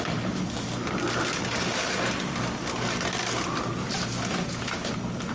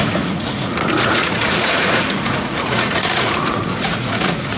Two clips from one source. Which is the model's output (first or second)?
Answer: second